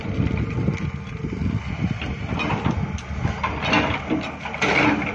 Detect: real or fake real